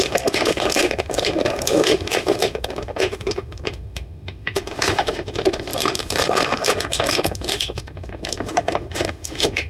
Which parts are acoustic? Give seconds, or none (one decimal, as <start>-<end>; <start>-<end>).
none